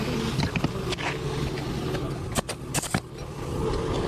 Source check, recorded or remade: recorded